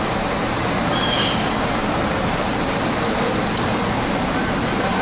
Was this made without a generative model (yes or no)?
yes